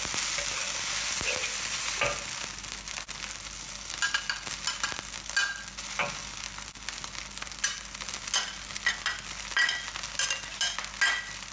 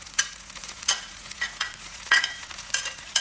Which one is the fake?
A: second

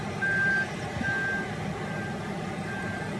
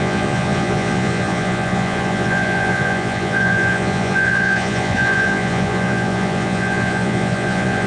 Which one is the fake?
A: second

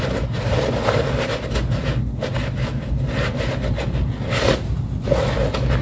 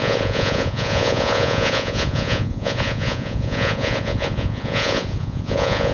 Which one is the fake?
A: second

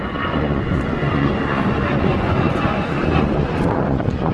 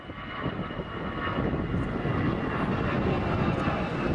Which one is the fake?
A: first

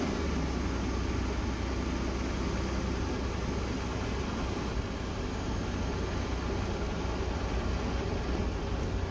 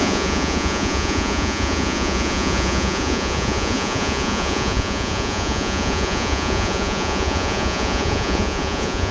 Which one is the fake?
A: second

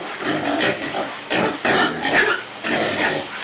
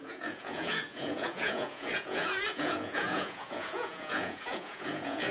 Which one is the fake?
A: second